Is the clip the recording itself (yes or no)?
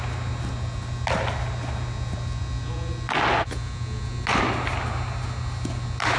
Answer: yes